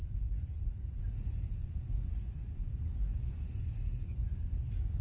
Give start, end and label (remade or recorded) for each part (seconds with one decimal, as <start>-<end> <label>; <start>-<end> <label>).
0.0-1.0 remade; 1.0-1.6 recorded; 1.6-4.6 remade; 4.6-5.0 recorded